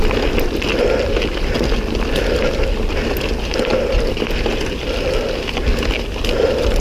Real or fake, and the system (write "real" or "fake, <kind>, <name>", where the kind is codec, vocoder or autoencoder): real